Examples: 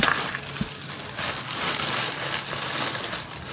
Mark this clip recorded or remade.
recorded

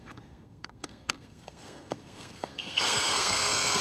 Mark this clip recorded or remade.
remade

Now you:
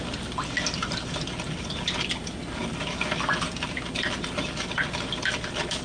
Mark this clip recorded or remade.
recorded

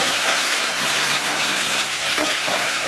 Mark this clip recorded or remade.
remade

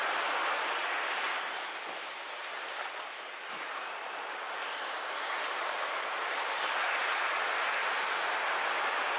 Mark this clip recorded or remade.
recorded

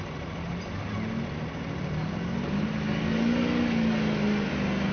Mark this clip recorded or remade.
recorded